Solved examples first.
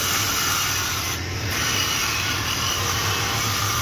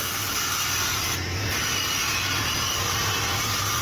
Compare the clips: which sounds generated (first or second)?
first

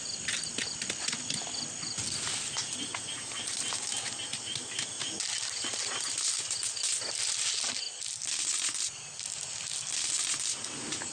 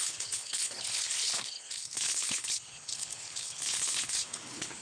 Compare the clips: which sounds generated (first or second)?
second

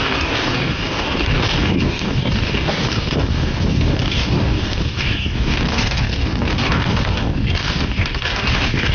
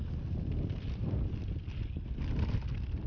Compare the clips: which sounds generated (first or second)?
first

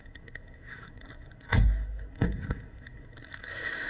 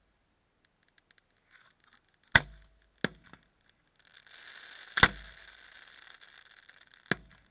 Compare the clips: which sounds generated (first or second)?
first